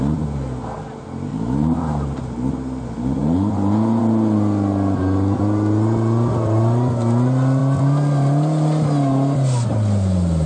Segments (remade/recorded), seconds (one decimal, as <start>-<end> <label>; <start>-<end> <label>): 0.0-1.3 recorded; 1.3-2.5 remade; 2.5-10.5 recorded

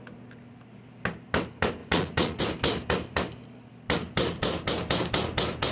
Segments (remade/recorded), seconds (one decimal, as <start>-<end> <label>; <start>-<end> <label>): 0.0-1.8 recorded; 1.8-2.4 remade; 2.4-5.7 recorded

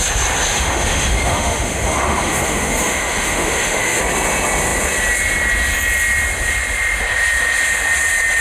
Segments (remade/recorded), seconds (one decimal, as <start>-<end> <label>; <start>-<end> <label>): 0.0-0.5 recorded; 0.5-4.0 remade; 4.0-8.4 recorded

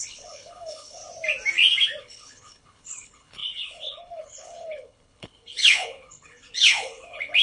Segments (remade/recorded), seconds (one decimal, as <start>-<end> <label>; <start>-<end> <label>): 0.0-1.0 remade; 1.0-2.0 recorded; 2.0-7.4 remade